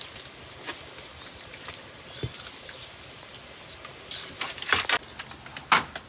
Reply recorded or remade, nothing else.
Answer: recorded